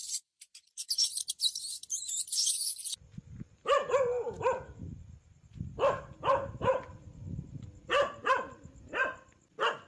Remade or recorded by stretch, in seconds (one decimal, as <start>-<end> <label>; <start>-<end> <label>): 0.0-0.7 recorded; 0.7-2.0 remade; 2.0-5.4 recorded; 5.4-9.9 remade